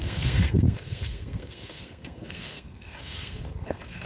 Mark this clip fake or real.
fake